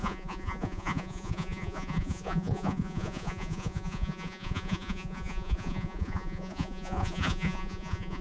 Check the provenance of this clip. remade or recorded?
remade